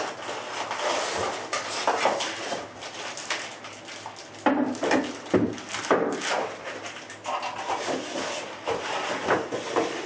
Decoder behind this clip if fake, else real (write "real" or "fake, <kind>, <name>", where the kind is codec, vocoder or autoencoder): real